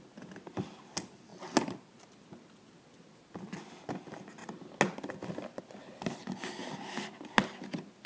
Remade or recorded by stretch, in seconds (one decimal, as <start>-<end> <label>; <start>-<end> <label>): 0.0-8.1 recorded